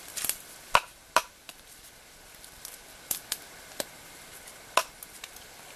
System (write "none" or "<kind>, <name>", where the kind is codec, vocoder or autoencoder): none